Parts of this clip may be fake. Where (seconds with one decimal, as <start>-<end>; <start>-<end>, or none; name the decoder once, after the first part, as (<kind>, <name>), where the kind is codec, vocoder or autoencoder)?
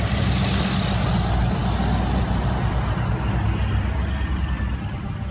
none